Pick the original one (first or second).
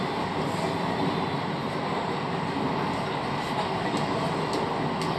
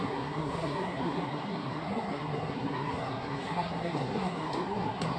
first